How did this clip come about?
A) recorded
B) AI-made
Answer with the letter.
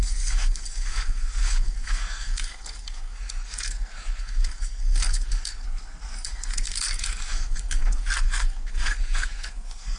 B